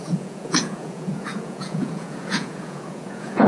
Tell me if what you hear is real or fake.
fake